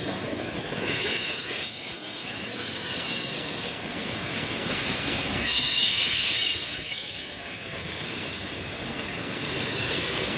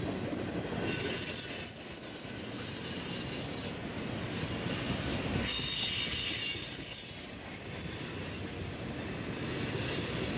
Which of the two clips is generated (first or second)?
first